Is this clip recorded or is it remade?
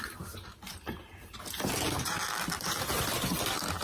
recorded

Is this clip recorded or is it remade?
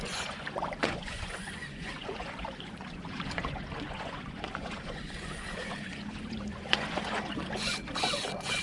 remade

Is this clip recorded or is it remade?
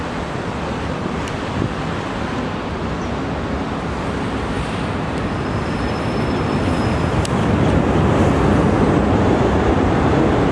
recorded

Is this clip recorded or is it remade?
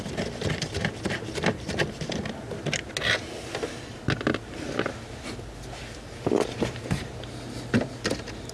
recorded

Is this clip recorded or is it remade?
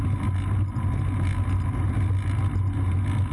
recorded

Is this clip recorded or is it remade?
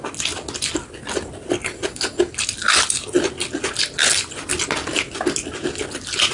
recorded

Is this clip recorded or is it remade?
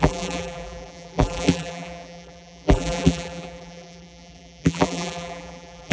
remade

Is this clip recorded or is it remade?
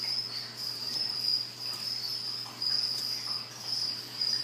recorded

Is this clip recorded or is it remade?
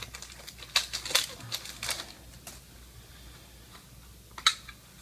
recorded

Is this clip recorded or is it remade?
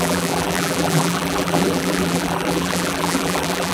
remade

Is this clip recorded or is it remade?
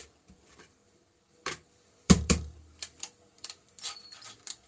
remade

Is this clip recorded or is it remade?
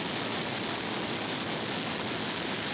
recorded